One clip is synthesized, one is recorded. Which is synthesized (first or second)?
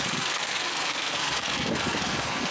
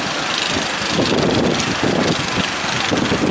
first